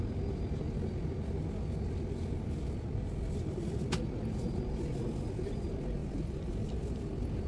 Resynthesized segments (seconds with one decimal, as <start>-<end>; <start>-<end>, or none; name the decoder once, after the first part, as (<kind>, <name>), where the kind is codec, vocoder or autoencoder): 6.0-6.8 (vocoder, BigVGAN v2)